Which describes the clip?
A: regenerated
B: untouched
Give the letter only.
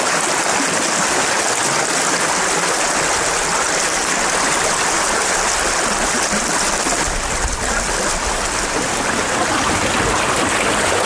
B